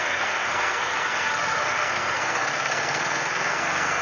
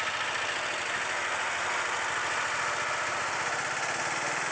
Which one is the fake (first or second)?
first